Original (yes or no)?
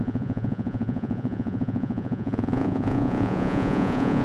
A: no